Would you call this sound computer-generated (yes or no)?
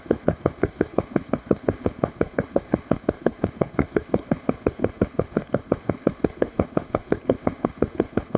yes